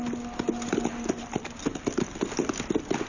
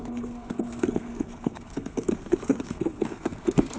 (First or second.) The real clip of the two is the first